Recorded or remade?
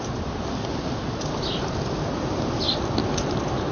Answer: recorded